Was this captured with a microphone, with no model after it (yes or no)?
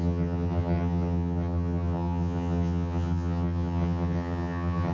no